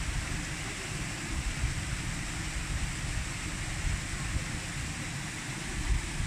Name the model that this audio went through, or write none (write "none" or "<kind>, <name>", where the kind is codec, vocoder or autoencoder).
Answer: none